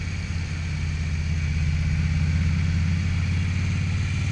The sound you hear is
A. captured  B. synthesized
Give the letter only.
A